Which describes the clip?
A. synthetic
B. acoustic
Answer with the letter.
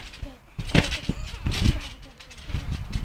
B